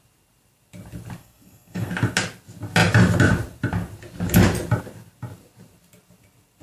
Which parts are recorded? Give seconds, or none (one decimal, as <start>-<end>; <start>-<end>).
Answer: 0.0-1.2; 1.9-6.6

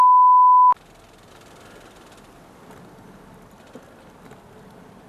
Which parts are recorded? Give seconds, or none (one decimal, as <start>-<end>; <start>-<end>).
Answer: 0.0-5.1